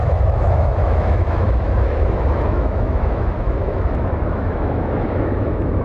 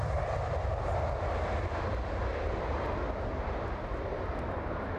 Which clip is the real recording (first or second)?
second